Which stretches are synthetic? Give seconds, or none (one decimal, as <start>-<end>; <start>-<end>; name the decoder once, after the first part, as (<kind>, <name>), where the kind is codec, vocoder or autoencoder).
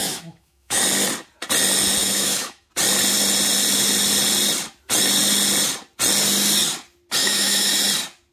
0.0-0.8 (autoencoder, DAC-VAE); 2.0-2.7; 7.2-7.7